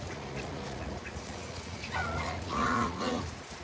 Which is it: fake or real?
fake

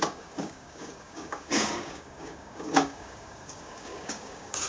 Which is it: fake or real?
fake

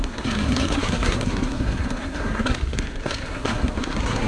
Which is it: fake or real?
fake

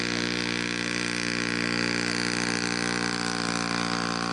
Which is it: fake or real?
real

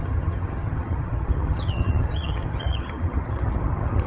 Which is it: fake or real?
fake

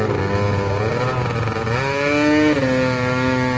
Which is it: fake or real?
real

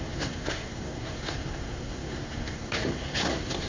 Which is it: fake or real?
fake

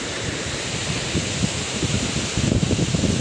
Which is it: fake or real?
fake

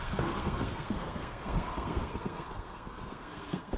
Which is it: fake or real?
fake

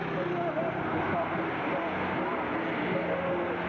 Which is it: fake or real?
real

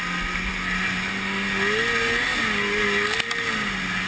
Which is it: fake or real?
real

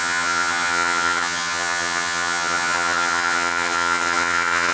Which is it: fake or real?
fake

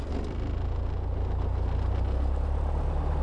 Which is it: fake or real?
real